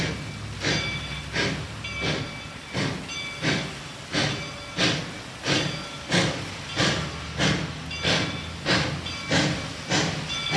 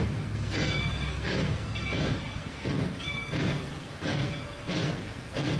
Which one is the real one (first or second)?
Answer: first